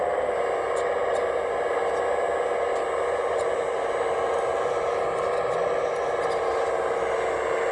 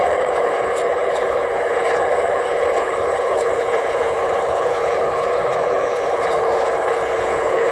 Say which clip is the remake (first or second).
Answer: second